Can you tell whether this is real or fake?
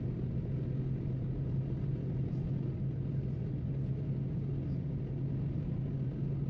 real